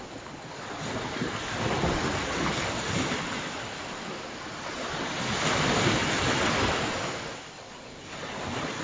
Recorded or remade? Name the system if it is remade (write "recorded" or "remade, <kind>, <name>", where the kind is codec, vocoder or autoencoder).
recorded